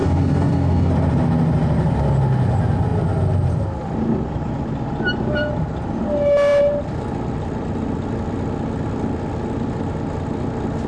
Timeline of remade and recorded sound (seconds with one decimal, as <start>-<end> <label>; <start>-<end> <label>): 0.0-0.9 remade; 0.9-10.9 recorded